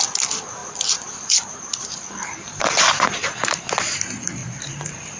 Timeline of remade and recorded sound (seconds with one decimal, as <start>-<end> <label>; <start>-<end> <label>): 0.0-0.6 recorded; 0.6-3.7 remade; 3.7-4.4 recorded; 4.4-5.2 remade